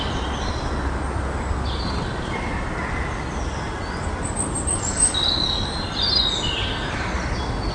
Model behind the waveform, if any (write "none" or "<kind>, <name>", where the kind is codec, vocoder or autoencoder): none